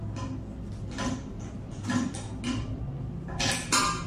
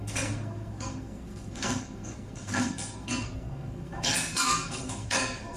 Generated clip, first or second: second